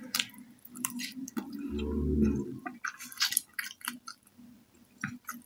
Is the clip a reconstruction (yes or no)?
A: yes